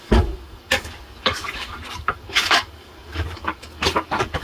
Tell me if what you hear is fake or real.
fake